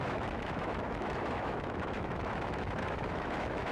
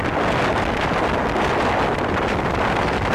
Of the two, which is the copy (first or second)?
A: first